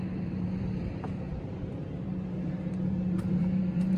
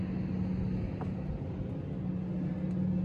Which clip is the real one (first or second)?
second